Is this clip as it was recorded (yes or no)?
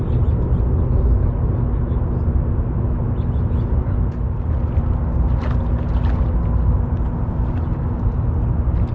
yes